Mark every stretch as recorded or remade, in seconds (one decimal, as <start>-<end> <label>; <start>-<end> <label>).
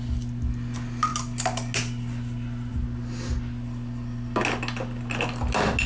0.0-5.9 recorded